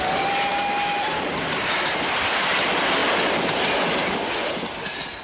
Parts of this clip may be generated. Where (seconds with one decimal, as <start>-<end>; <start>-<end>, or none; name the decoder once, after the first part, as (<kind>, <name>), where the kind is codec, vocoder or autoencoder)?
none